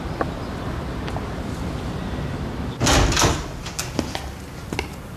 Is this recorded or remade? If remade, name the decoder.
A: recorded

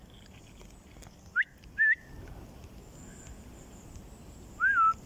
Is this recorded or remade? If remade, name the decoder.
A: recorded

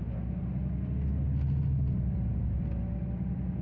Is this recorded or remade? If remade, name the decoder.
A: recorded